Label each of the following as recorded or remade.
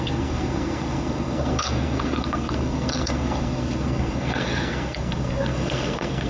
remade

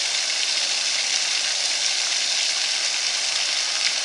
recorded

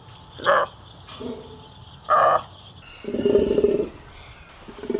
recorded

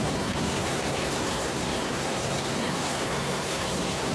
remade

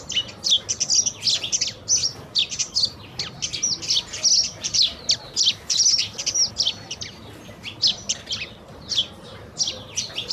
recorded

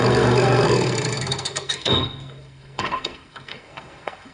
remade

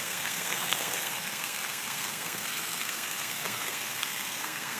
remade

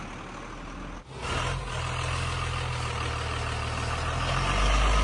recorded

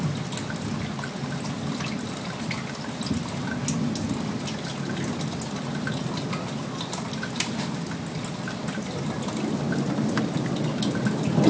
recorded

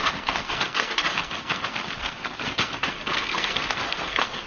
remade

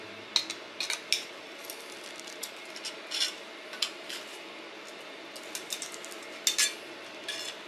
recorded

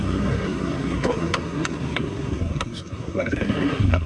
remade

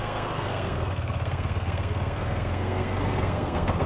remade